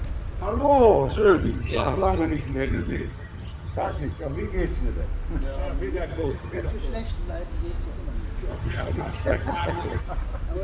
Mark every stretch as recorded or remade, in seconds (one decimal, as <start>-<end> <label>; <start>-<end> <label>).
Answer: 0.0-0.5 recorded; 0.5-4.5 remade; 4.5-6.1 recorded; 6.1-6.7 remade; 6.7-8.5 recorded; 8.5-10.0 remade; 10.0-10.6 recorded